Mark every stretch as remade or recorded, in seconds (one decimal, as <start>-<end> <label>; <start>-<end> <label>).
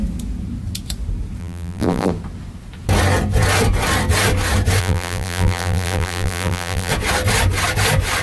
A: 0.0-1.4 recorded; 1.4-2.1 remade; 2.1-4.8 recorded; 4.8-6.9 remade; 6.9-8.2 recorded